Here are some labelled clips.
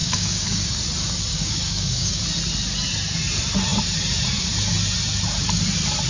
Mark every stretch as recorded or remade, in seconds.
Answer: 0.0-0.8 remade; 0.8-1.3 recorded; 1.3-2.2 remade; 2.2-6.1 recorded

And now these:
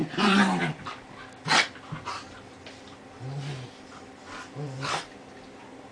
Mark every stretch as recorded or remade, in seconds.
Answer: 0.0-5.9 recorded